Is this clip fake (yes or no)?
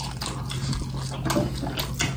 no